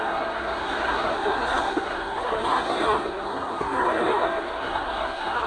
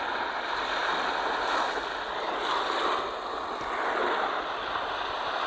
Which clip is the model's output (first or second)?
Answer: first